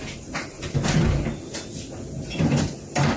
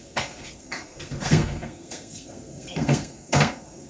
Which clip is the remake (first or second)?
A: second